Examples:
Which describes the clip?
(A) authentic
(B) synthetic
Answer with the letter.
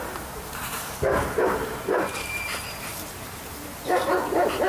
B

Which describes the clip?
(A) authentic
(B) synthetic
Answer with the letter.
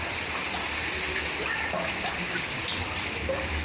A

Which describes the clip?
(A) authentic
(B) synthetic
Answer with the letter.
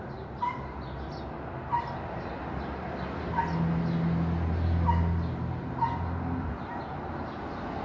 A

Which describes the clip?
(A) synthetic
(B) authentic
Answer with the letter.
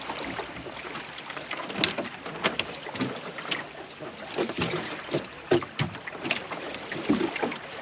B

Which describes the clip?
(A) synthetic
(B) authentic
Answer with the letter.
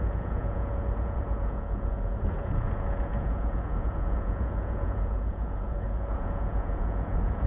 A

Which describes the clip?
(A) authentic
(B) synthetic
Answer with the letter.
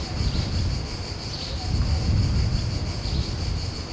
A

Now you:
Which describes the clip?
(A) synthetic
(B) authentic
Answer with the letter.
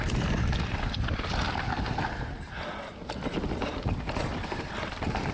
B